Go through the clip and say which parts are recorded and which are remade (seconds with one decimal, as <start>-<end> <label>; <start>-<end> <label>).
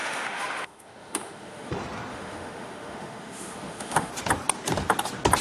0.0-1.7 remade; 1.7-2.1 recorded; 2.1-4.1 remade; 4.1-5.4 recorded